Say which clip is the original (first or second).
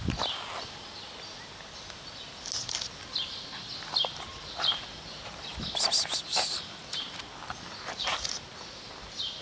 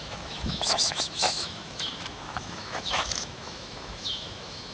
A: first